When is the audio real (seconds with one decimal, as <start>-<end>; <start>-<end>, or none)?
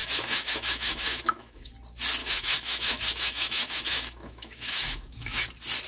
1.7-2.2; 5.4-5.9